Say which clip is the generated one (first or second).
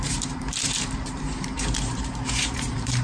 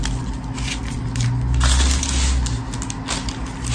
first